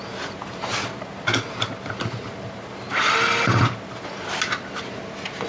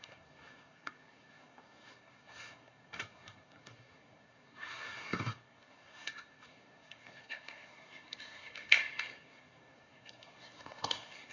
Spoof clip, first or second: second